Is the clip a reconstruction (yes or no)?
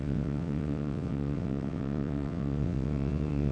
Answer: yes